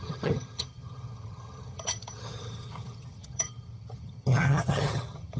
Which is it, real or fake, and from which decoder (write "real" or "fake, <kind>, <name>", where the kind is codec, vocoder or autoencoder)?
fake, vocoder, HiFi-GAN